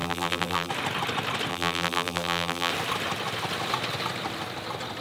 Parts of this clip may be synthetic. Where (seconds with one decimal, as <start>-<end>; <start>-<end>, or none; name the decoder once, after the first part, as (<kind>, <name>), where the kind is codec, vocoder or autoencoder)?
0.0-0.7 (vocoder, BigVGAN v2); 1.5-2.7